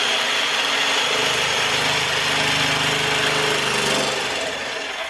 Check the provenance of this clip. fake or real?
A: real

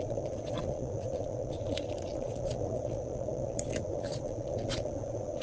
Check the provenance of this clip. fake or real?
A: fake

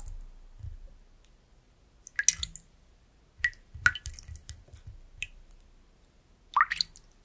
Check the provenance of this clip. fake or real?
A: real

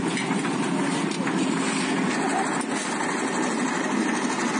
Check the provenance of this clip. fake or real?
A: real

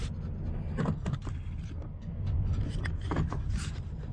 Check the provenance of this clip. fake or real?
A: real